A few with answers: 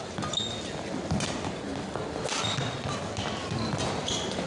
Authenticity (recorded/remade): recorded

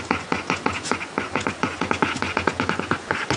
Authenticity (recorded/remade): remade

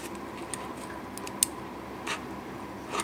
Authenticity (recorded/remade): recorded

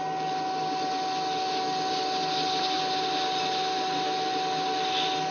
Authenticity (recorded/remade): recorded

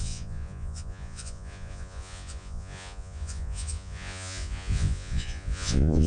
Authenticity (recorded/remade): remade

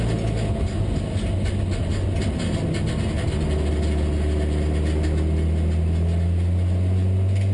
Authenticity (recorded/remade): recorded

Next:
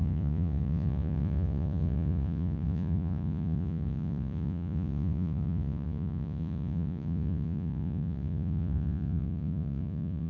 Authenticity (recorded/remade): remade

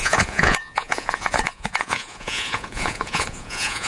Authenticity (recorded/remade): remade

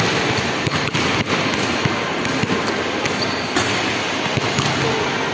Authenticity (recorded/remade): recorded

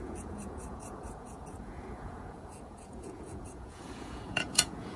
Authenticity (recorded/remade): remade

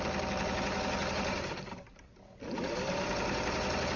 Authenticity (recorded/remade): recorded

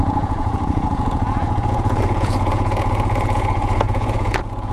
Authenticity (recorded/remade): remade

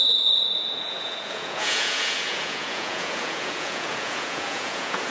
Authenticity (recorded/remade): remade